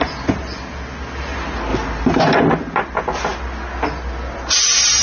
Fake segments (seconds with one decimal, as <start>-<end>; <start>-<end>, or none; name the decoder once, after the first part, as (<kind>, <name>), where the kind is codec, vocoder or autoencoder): none